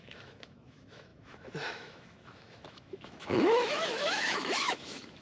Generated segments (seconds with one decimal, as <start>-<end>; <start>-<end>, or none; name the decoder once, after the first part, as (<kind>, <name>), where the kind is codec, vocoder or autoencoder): 0.0-5.2 (autoencoder, DAC-VAE)